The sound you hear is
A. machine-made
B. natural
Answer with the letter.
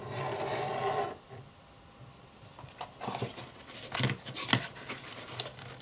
B